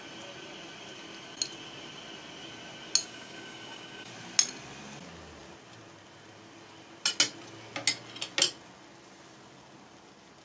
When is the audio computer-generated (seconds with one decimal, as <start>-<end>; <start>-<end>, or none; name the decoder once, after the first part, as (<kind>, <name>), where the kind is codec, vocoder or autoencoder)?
3.0-4.1 (codec, DAC)